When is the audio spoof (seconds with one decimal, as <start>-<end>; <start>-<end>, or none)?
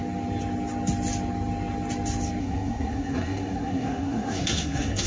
2.4-5.1